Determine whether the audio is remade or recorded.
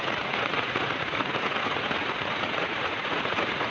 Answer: remade